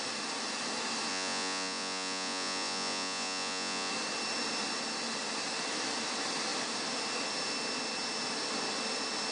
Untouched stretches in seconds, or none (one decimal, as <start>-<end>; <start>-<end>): 0.0-1.1; 3.9-9.3